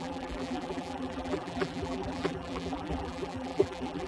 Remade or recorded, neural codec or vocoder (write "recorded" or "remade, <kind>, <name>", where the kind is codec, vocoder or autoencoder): remade, vocoder, BigVGAN v2